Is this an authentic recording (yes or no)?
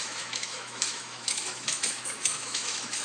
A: no